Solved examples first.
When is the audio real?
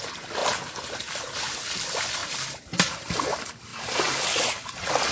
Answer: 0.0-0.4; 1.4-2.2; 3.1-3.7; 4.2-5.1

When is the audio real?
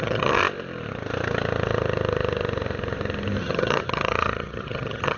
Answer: 0.4-3.4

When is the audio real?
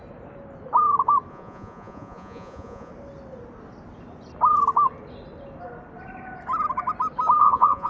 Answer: 0.0-1.3; 2.9-7.4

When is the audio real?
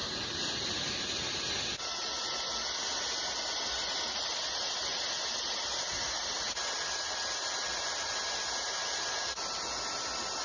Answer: 0.0-10.4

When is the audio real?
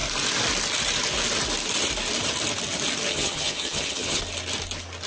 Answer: 0.0-3.1; 4.2-5.1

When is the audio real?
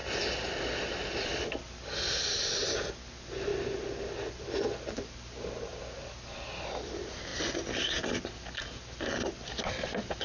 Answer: 0.0-10.2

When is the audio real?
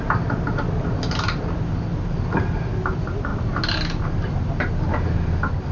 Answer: 0.0-5.7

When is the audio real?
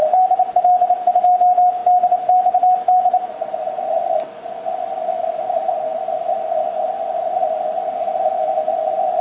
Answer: 0.0-9.2